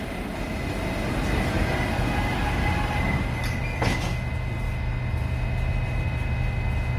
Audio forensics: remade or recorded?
recorded